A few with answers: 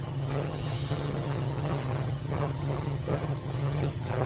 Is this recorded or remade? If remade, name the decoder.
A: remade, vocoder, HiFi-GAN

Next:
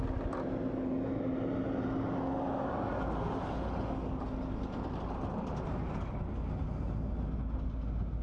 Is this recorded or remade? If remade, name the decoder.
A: recorded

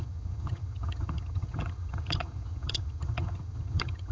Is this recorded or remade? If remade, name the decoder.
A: remade, vocoder, HiFi-GAN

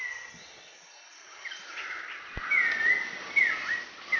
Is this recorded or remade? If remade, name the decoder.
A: recorded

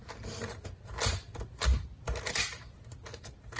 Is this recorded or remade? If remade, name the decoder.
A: recorded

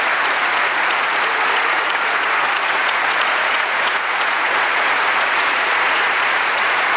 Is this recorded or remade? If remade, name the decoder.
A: remade, vocoder, Vocos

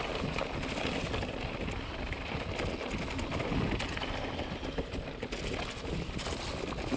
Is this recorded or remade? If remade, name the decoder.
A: recorded